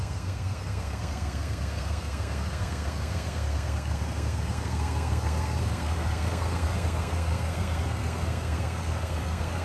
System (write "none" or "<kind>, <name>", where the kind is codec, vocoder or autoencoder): codec, SNAC